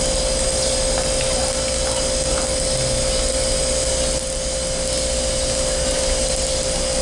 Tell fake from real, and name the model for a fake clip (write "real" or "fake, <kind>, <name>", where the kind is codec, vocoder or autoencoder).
real